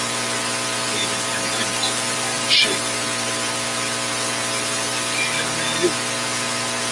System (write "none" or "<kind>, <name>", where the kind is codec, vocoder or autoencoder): none